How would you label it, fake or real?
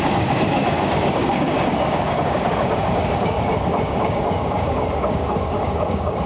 fake